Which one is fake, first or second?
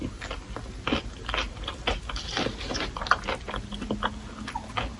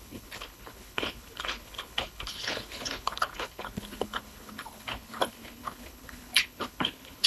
second